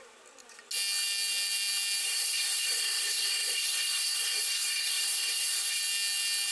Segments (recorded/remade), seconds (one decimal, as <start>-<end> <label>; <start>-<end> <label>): 0.0-2.0 recorded; 2.0-5.8 remade; 5.8-6.5 recorded